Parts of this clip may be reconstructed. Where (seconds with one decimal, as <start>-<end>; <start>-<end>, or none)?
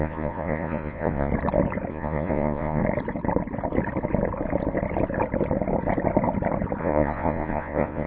0.0-1.3; 1.9-2.8; 6.8-8.1